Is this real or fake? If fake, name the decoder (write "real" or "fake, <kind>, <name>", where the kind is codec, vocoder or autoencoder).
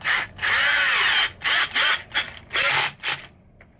real